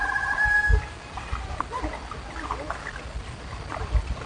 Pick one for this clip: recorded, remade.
recorded